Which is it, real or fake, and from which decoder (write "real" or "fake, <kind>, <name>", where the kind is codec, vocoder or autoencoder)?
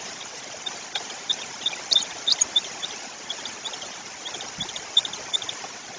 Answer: fake, vocoder, BigVGAN v2